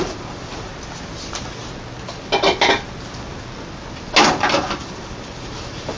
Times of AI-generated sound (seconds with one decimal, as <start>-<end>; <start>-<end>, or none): 0.0-0.7; 4.3-6.0